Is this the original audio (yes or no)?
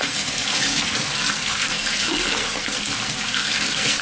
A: no